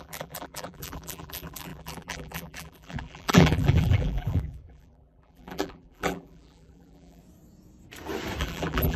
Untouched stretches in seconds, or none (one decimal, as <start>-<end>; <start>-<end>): 7.2-8.4